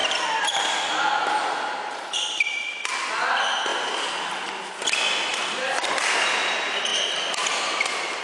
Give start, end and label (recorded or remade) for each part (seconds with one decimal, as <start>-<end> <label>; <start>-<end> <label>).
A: 0.0-2.5 remade; 2.5-5.3 recorded; 5.3-6.0 remade; 6.0-6.9 recorded; 6.9-8.2 remade